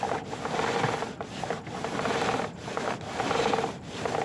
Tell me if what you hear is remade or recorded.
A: recorded